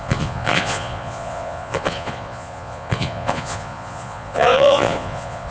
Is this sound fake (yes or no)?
yes